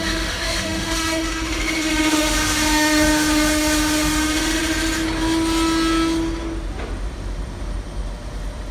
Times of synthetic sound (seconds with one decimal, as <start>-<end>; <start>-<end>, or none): 0.0-4.6